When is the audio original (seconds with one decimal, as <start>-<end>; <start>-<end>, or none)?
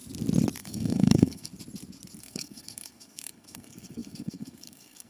0.0-0.6; 1.5-2.2